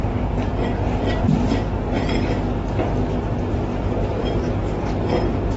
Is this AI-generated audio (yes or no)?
no